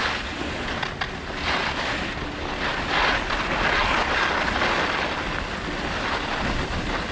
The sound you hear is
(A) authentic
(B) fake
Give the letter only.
A